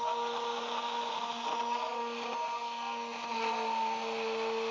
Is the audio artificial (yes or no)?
no